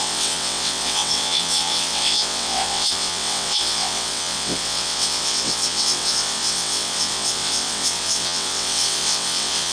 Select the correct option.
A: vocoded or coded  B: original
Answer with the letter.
A